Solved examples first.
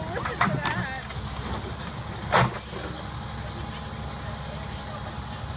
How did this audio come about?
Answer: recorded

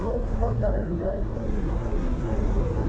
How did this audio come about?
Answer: remade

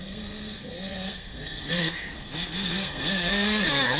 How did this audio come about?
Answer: remade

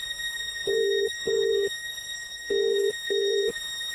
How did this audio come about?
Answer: remade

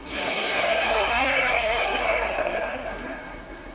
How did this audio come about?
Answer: remade